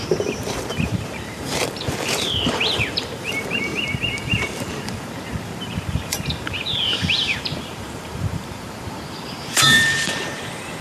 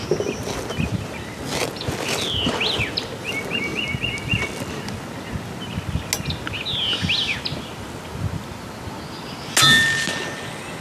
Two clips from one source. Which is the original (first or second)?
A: second